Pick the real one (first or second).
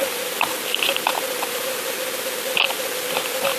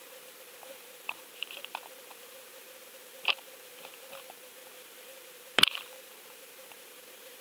first